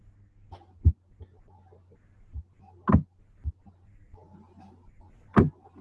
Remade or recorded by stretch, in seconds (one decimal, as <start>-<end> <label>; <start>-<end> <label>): 0.0-5.8 recorded